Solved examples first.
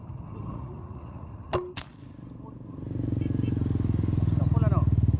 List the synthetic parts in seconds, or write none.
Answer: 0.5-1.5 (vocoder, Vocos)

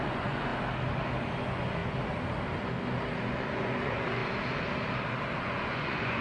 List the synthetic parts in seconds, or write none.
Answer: 0.0-0.5 (vocoder, Vocos); 1.4-1.8; 3.2-4.2; 5.4-6.2

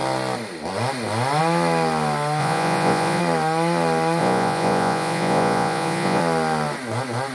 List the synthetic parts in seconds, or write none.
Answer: 2.4-3.2 (vocoder, Vocos); 4.2-6.2

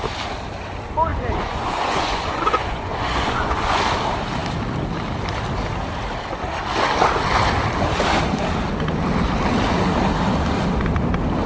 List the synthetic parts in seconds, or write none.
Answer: 1.1-3.8 (vocoder, Vocos)

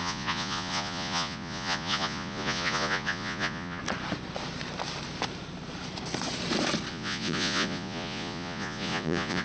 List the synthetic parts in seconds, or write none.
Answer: 0.0-3.8 (vocoder, Vocos); 6.9-9.4

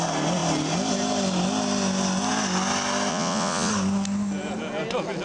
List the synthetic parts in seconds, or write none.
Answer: 3.1-3.7 (vocoder, Vocos)

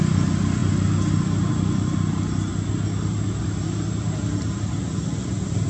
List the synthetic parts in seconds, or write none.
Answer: none